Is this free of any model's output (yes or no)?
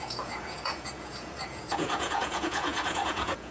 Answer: no